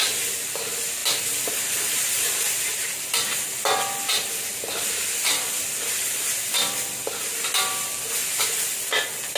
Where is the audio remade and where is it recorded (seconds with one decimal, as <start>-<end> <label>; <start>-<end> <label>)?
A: 0.0-9.4 recorded

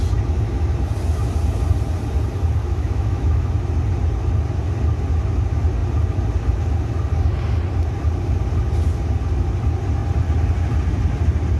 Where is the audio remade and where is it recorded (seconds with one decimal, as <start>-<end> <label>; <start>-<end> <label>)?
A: 0.0-2.6 recorded; 2.6-3.5 remade; 3.5-11.6 recorded

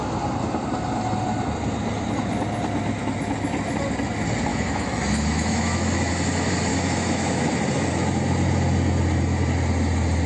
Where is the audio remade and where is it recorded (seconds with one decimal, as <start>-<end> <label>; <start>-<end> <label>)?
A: 0.0-4.5 recorded; 4.5-6.1 remade; 6.1-6.7 recorded; 6.7-7.5 remade; 7.5-10.3 recorded